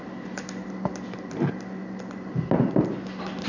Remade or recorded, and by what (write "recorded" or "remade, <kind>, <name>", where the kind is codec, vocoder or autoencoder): recorded